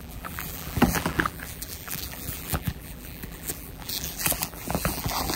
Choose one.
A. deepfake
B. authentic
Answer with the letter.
A